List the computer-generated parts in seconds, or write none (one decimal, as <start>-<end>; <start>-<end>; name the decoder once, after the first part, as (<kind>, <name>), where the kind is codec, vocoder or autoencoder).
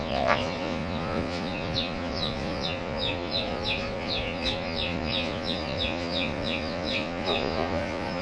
0.0-8.2 (vocoder, Vocos)